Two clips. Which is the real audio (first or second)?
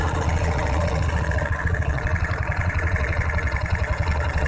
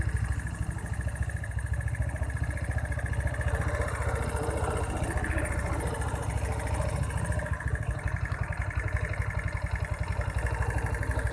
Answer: second